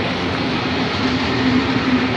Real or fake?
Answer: real